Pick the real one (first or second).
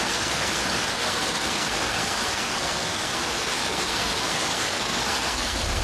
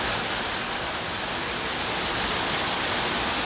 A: second